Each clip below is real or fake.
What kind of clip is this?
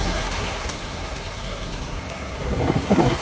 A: fake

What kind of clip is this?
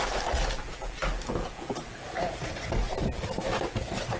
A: real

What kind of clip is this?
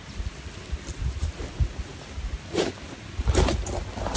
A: real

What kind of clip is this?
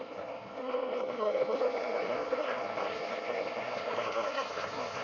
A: fake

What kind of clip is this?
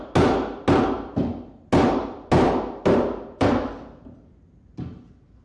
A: real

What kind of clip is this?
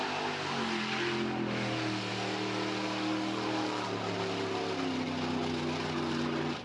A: real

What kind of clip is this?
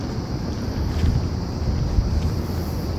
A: real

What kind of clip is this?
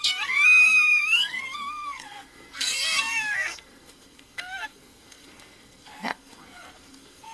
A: fake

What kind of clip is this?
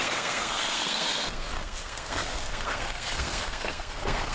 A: fake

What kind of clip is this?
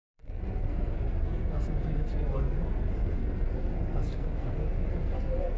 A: fake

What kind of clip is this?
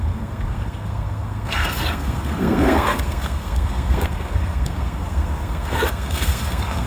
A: fake